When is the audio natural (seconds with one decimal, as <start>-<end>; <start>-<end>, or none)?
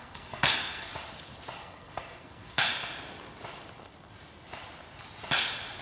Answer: 0.9-1.6; 2.7-5.8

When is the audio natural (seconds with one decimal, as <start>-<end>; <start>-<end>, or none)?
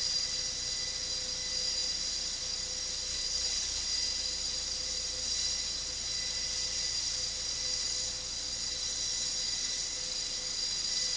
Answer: 0.0-3.1; 3.8-11.2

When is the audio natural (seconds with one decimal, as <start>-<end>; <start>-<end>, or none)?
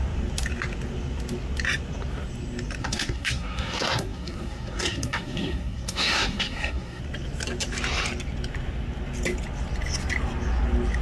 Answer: 0.0-2.8; 7.0-11.0